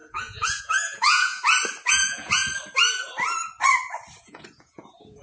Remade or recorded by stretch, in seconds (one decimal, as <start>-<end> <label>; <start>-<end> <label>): 0.0-1.4 remade; 1.4-1.9 recorded; 1.9-2.4 remade; 2.4-4.2 recorded; 4.2-5.2 remade